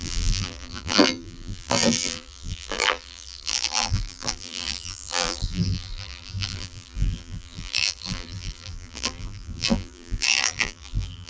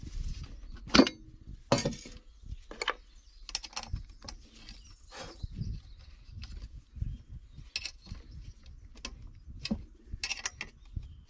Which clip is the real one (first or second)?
second